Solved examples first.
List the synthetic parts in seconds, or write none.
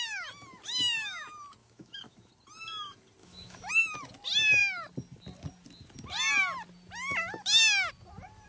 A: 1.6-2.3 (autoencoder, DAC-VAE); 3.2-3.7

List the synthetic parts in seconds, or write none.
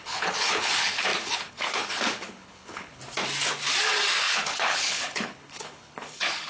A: 0.0-3.0 (codec, HILCodec); 4.2-6.5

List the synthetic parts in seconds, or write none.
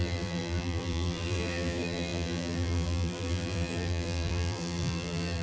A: 0.0-5.4 (vocoder, BigVGAN v2)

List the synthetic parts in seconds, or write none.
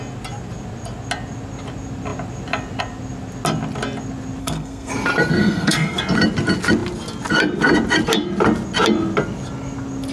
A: 4.4-4.9 (codec, SNAC); 5.4-6.0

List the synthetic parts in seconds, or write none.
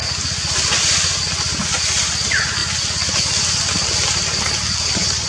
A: 1.2-2.6 (vocoder, BigVGAN v2); 4.4-5.3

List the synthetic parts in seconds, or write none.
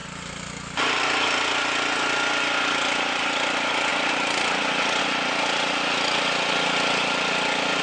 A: none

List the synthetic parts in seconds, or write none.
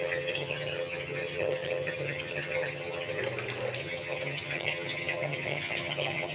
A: 0.0-3.2 (vocoder, HiFi-GAN); 3.8-6.3